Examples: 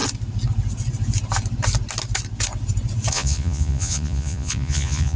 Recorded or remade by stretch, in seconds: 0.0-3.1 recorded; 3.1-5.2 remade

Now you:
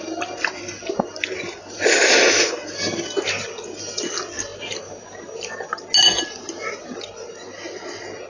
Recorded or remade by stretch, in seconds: 0.0-8.3 recorded

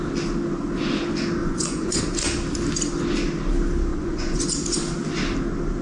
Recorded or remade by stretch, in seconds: 0.0-1.4 recorded; 1.4-2.0 remade; 2.0-3.9 recorded; 3.9-4.4 remade; 4.4-5.8 recorded

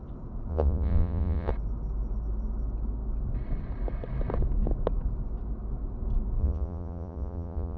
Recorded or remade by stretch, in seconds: 0.0-0.5 recorded; 0.5-1.5 remade; 1.5-6.4 recorded; 6.4-7.8 remade

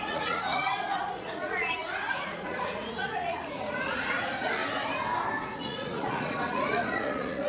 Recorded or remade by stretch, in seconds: 0.0-4.6 remade; 4.6-5.4 recorded; 5.4-7.5 remade

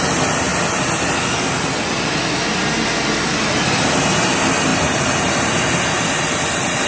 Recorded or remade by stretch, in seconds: 0.0-6.9 recorded

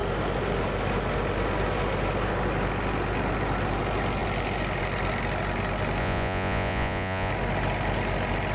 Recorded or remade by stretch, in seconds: 0.0-6.0 recorded; 6.0-7.3 remade; 7.3-8.5 recorded

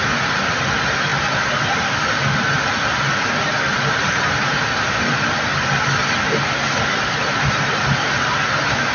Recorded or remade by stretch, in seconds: 0.0-8.9 recorded